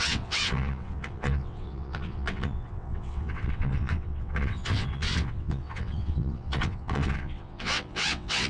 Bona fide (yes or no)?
no